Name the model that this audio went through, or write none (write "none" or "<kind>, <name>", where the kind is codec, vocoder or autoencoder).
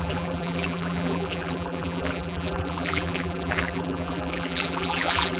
vocoder, BigVGAN v2